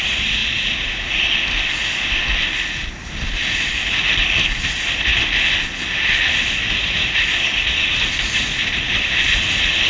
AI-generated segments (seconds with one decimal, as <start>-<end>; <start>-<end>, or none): none